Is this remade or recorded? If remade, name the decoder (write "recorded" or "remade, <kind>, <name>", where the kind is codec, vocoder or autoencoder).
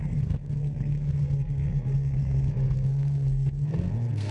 remade, codec, SNAC